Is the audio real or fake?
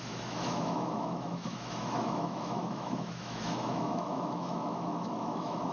fake